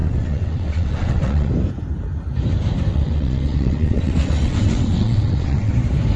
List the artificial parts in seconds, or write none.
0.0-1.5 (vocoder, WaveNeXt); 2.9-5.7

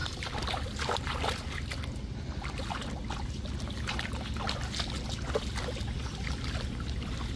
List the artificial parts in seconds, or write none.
none

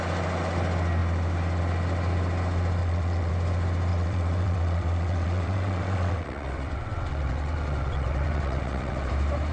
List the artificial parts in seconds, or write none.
2.8-3.3 (vocoder, WaveNeXt); 3.9-9.1